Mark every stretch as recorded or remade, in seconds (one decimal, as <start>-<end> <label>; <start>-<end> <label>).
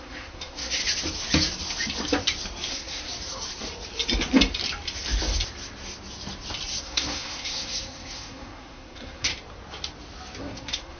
0.0-0.8 remade; 0.8-2.7 recorded; 2.7-3.1 remade; 3.1-6.8 recorded; 6.8-9.3 remade; 9.3-10.4 recorded; 10.4-11.0 remade